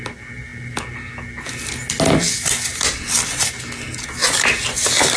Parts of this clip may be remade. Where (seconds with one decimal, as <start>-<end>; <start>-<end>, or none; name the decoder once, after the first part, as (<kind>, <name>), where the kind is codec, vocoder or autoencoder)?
none